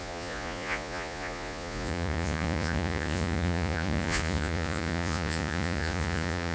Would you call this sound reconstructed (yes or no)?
yes